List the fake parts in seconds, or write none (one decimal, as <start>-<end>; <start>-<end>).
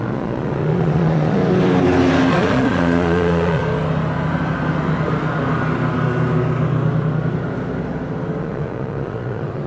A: 0.0-1.4; 2.3-3.6; 8.4-9.7